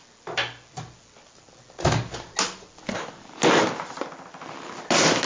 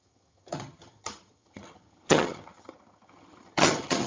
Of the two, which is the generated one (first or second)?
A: second